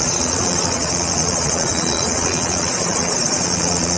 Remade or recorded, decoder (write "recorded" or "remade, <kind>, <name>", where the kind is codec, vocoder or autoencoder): remade, vocoder, Vocos